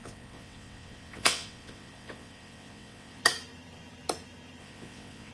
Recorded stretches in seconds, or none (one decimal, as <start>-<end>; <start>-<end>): 3.2-4.6